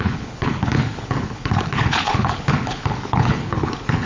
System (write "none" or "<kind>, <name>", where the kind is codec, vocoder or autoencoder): codec, HILCodec